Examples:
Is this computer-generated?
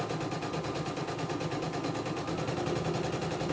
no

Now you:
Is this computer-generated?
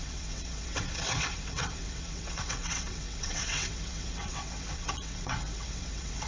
yes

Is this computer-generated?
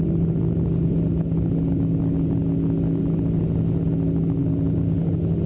no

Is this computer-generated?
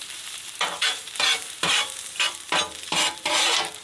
yes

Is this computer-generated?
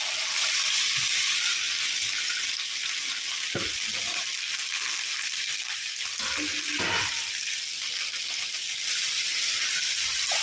no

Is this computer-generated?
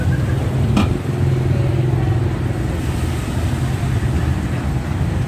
no